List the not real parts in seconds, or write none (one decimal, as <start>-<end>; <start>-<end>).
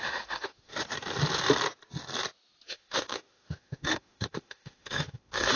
0.0-0.7; 2.7-5.6